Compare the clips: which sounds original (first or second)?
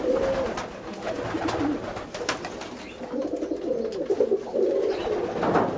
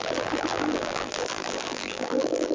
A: first